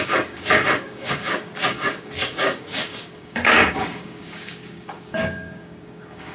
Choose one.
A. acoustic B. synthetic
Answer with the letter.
B